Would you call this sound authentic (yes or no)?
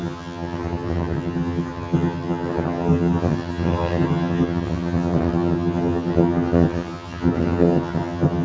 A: no